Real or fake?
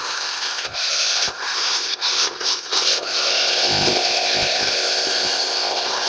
fake